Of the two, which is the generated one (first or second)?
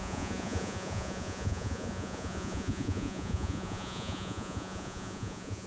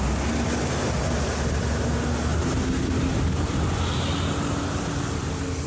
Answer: first